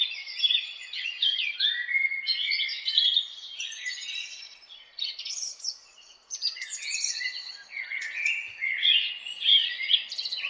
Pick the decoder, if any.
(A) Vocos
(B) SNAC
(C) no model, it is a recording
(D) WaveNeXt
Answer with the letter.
A